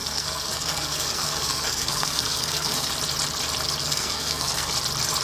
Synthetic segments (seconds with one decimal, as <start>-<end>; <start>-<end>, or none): 0.0-2.9; 3.8-4.7